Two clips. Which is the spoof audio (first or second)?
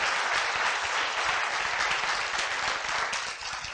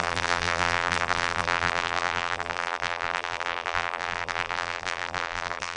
second